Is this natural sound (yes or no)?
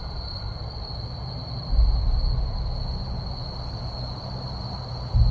yes